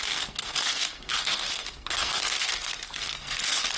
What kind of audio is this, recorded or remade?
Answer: remade